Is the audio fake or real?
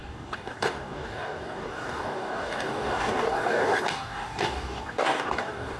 fake